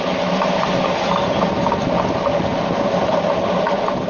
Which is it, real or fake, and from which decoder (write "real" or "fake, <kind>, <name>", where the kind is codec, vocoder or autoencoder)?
real